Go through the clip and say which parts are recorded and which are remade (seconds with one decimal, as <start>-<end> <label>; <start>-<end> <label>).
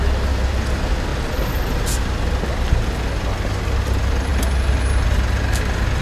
0.0-6.0 recorded